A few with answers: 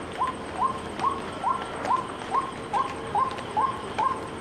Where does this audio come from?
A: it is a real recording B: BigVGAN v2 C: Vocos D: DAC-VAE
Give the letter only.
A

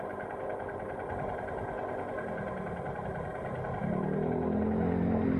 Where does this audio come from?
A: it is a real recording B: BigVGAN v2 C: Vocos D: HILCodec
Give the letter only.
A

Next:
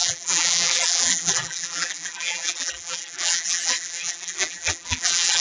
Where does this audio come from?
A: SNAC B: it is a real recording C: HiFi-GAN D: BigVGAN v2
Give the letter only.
D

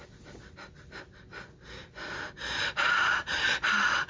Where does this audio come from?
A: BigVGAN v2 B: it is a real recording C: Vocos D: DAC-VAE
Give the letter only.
B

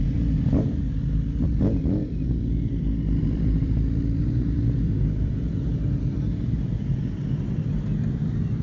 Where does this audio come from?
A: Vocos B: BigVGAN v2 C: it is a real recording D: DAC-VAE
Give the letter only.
B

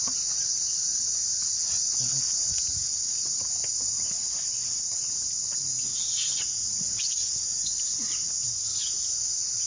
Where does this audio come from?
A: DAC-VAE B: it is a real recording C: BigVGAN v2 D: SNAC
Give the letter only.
B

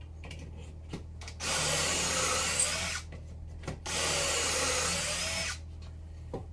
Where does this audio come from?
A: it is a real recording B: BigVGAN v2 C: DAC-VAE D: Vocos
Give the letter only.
A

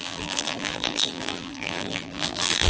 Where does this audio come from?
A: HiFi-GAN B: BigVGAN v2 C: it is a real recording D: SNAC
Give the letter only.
B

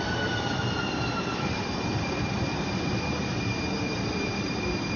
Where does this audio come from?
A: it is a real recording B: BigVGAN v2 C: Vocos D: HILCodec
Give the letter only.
B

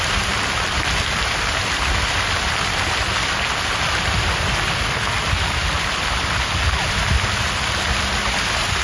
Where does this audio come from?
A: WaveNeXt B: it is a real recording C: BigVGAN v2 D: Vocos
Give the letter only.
C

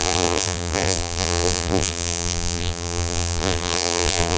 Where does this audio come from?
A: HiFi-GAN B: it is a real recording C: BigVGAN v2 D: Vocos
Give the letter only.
C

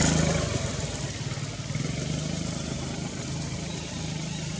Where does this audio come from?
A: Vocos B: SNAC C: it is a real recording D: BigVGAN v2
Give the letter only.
D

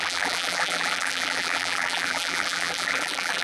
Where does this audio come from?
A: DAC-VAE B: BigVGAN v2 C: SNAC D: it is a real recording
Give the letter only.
B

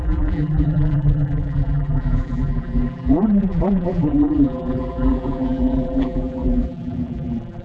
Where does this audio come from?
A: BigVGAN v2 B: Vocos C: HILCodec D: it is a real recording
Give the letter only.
A